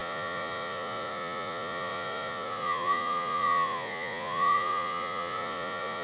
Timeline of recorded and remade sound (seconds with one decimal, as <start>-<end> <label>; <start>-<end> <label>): 0.0-6.0 remade